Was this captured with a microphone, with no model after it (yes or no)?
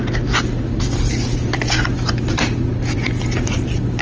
yes